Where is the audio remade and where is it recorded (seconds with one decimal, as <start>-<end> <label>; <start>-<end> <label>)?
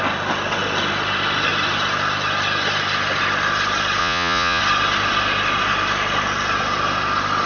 0.0-4.0 recorded; 4.0-4.6 remade; 4.6-7.5 recorded